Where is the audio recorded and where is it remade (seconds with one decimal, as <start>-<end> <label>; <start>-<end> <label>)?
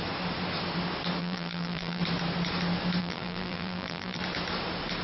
0.0-1.2 recorded; 1.2-2.0 remade; 2.0-3.0 recorded; 3.0-4.2 remade; 4.2-5.0 recorded